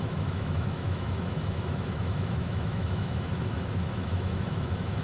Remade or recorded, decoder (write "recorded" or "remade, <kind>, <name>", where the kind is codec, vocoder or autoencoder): remade, autoencoder, DAC-VAE